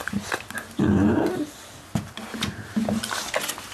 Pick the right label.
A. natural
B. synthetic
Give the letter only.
A